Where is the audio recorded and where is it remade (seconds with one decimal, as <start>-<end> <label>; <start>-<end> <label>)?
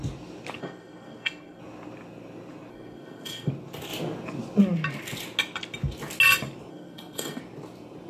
0.0-0.6 recorded; 0.6-1.6 remade; 1.6-2.7 recorded; 2.7-3.5 remade; 3.5-6.7 recorded; 6.7-7.4 remade; 7.4-8.1 recorded